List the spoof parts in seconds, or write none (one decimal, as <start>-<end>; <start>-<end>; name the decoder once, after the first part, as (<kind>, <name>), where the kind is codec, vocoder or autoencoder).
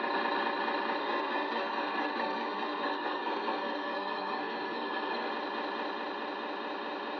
1.0-5.3 (codec, SNAC)